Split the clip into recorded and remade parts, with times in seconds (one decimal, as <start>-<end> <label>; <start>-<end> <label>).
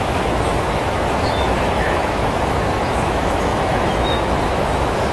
0.0-5.1 remade